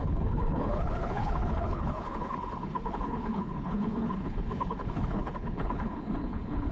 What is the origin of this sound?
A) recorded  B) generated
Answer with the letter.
B